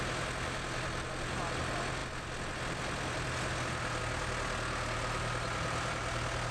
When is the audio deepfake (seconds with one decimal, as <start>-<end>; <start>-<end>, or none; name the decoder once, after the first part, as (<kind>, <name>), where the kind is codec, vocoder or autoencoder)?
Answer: none